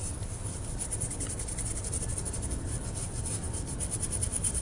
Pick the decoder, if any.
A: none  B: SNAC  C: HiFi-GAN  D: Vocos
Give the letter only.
A